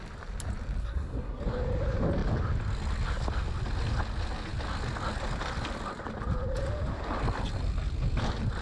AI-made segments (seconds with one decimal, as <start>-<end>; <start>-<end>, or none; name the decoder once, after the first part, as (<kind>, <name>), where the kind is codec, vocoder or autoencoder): 0.8-1.4 (codec, SNAC)